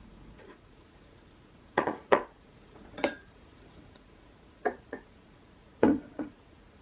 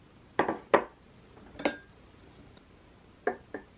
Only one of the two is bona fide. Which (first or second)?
second